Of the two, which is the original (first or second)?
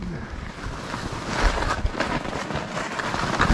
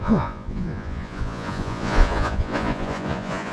first